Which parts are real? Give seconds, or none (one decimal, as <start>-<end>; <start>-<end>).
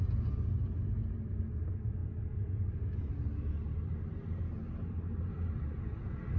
0.0-6.4